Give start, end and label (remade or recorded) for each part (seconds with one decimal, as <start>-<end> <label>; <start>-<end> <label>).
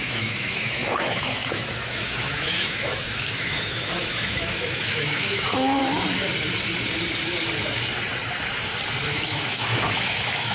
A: 0.0-5.8 remade; 5.8-9.1 recorded; 9.1-10.5 remade